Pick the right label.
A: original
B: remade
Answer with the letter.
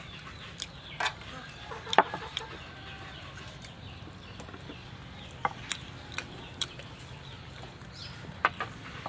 B